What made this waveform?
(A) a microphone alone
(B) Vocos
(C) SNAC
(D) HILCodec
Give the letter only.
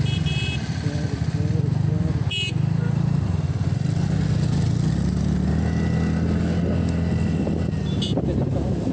A